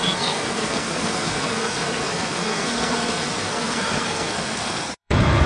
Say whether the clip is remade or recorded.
remade